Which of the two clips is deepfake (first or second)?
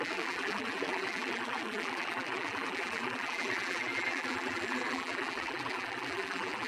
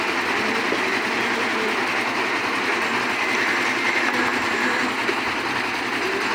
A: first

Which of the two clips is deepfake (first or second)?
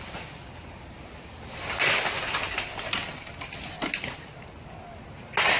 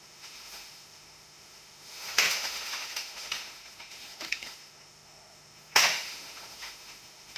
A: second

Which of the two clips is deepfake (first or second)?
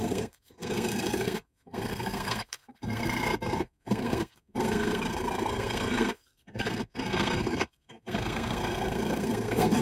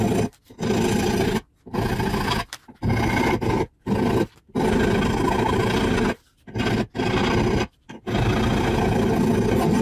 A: first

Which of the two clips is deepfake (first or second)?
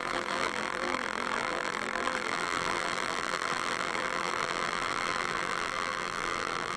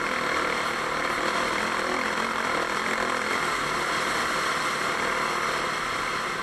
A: first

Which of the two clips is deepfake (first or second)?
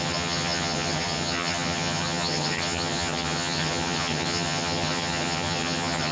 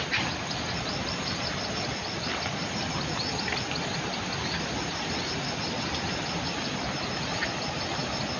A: first